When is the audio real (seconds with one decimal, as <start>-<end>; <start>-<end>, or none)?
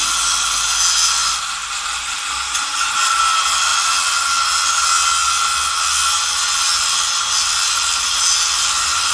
0.0-1.2; 1.7-9.1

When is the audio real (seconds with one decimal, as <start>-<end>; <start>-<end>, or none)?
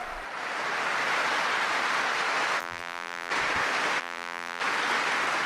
0.0-2.6; 3.3-4.0; 4.6-5.5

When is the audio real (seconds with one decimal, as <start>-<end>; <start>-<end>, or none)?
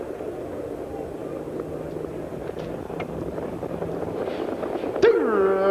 0.0-2.3; 4.2-5.7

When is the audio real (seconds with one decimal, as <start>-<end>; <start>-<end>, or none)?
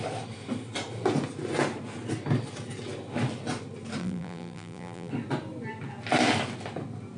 0.0-4.0; 5.1-7.2